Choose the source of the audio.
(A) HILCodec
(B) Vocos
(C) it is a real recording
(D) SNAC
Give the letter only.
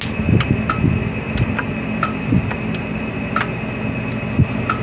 C